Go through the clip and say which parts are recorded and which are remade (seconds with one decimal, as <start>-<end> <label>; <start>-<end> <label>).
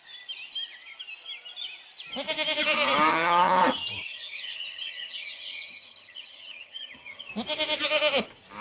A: 0.0-3.1 recorded; 3.1-3.6 remade; 3.6-4.1 recorded; 4.1-7.3 remade; 7.3-8.6 recorded